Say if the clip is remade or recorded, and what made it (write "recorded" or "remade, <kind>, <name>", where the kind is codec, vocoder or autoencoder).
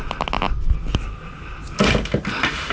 recorded